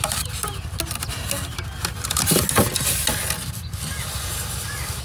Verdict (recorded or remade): recorded